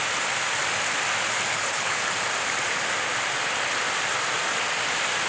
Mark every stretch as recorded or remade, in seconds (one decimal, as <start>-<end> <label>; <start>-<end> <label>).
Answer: 0.0-1.5 recorded; 1.5-2.1 remade; 2.1-5.3 recorded